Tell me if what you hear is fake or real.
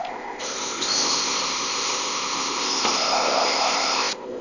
fake